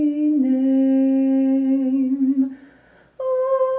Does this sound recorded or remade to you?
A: recorded